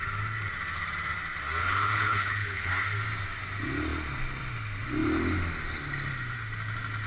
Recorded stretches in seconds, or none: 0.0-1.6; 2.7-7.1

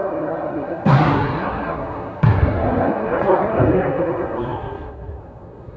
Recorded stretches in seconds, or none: none

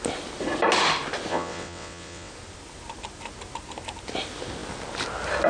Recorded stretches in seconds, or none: 0.0-1.3; 2.3-5.5

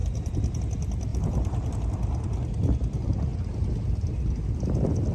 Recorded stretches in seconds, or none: 0.6-1.1; 1.7-5.1

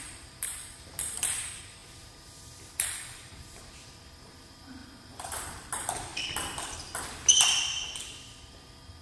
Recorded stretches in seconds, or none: 6.1-9.0

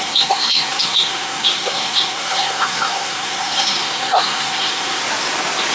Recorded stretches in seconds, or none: 5.0-5.7